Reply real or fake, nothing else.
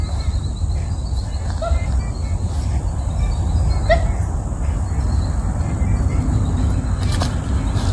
real